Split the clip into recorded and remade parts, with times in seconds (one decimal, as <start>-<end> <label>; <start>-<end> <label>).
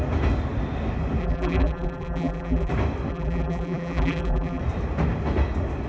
0.0-1.2 recorded; 1.2-2.7 remade; 2.7-3.1 recorded; 3.1-4.6 remade; 4.6-5.9 recorded